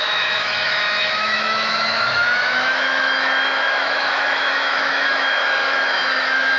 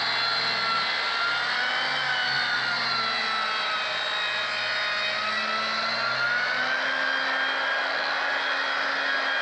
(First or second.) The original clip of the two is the second